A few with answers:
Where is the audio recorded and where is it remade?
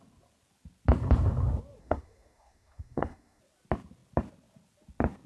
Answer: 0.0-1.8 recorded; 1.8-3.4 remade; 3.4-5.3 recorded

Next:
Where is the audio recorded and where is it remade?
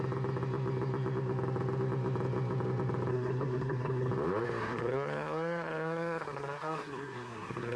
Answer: 0.0-3.1 recorded; 3.1-4.1 remade; 4.1-4.6 recorded; 4.6-7.8 remade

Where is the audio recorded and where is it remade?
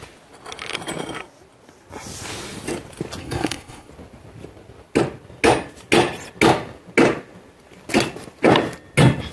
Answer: 0.0-3.2 recorded; 3.2-3.9 remade; 3.9-9.3 recorded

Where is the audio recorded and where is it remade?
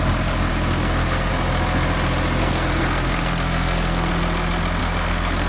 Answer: 0.0-0.5 recorded; 0.5-1.3 remade; 1.3-2.4 recorded; 2.4-4.1 remade; 4.1-4.8 recorded; 4.8-5.5 remade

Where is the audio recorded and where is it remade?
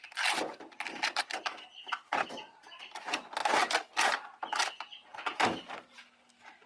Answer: 0.0-6.7 recorded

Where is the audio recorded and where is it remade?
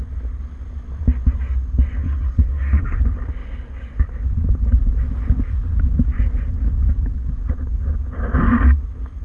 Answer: 0.0-2.0 recorded; 2.0-3.0 remade; 3.0-9.2 recorded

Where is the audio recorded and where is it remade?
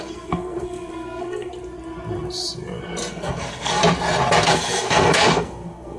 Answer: 0.0-1.5 remade; 1.5-3.1 recorded; 3.1-3.8 remade; 3.8-4.4 recorded; 4.4-6.0 remade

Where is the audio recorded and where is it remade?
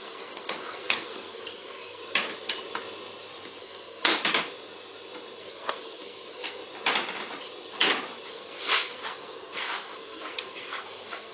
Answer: 0.0-2.0 remade; 2.0-3.6 recorded; 3.6-4.1 remade; 4.1-5.4 recorded; 5.4-6.6 remade; 6.6-8.3 recorded; 8.3-11.3 remade